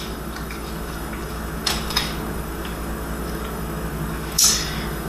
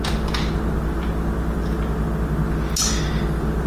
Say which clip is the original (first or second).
second